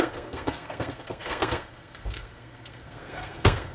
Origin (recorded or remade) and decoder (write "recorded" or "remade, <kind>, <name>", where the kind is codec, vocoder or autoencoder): remade, codec, SNAC